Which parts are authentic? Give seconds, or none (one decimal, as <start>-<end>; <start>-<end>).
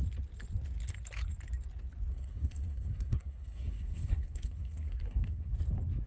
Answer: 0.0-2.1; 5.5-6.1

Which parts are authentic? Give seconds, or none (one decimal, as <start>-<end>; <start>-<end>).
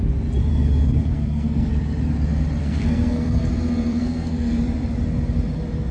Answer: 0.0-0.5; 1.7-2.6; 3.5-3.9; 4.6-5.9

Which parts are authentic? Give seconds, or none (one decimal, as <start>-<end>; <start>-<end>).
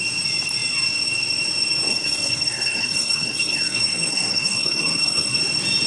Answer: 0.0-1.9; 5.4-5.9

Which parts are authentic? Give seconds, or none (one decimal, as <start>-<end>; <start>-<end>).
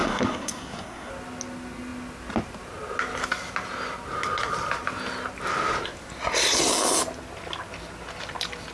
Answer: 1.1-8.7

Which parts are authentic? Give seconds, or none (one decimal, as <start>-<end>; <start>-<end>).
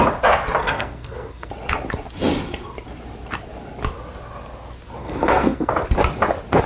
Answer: 0.0-0.6; 1.5-5.0; 5.7-6.7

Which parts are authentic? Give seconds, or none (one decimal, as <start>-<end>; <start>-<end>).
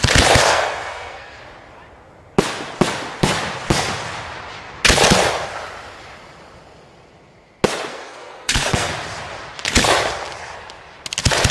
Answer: 0.0-0.4; 1.4-7.9; 8.9-11.5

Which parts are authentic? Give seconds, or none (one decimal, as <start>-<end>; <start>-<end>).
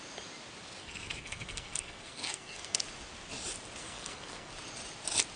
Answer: 0.0-0.8; 2.8-3.8; 4.5-5.4